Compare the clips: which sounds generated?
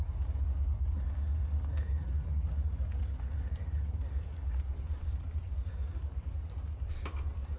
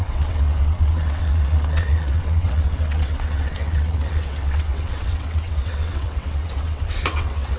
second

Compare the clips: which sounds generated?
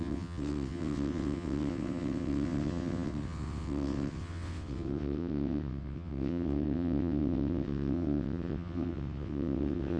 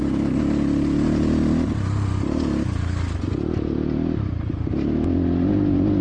first